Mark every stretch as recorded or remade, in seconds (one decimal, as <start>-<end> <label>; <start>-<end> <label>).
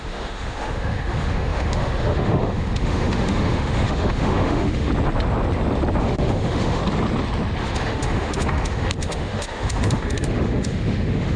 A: 0.0-4.9 remade; 4.9-6.0 recorded; 6.0-6.8 remade; 6.8-7.6 recorded; 7.6-11.4 remade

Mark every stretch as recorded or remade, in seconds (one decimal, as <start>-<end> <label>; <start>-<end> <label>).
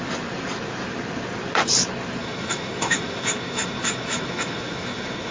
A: 0.0-2.2 recorded; 2.2-5.3 remade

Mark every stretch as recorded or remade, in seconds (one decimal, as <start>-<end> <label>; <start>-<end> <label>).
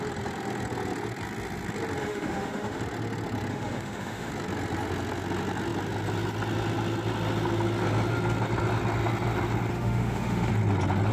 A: 0.0-2.0 recorded; 2.0-2.8 remade; 2.8-3.5 recorded; 3.5-4.3 remade; 4.3-9.7 recorded; 9.7-10.5 remade; 10.5-11.1 recorded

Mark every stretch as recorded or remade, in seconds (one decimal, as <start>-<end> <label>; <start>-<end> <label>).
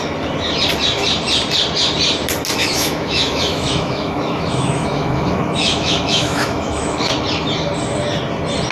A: 0.0-2.6 recorded; 2.6-7.1 remade; 7.1-8.7 recorded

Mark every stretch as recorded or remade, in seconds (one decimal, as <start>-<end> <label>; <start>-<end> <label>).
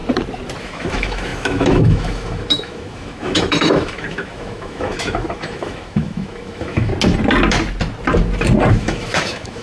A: 0.0-0.6 recorded; 0.6-6.9 remade; 6.9-8.7 recorded; 8.7-9.6 remade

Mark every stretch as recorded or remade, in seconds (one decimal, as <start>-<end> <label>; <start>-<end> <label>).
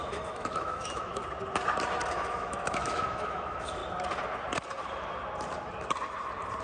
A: 0.0-1.2 remade; 1.2-2.1 recorded; 2.1-3.8 remade; 3.8-6.6 recorded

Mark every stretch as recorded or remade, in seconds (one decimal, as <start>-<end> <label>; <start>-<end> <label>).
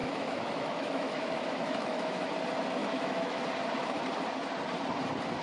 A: 0.0-2.3 remade; 2.3-2.8 recorded; 2.8-3.4 remade; 3.4-5.4 recorded